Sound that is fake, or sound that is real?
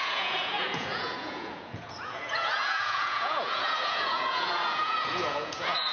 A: fake